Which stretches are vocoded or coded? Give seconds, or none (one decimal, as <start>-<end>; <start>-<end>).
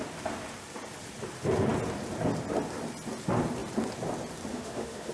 4.5-5.1